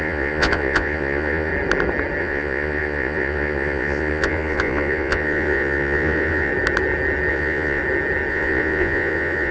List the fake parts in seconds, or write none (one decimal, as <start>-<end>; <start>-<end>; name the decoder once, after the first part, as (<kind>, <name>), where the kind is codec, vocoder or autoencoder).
0.0-1.5 (vocoder, Vocos); 2.2-6.5; 7.3-7.8; 8.3-9.5